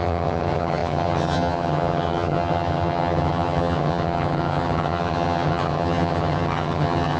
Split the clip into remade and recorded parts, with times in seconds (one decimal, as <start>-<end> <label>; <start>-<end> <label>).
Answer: 0.0-7.2 remade